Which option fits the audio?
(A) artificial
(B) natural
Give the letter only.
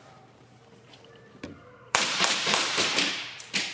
A